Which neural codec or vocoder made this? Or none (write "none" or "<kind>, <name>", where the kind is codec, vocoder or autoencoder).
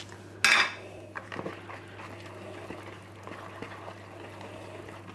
none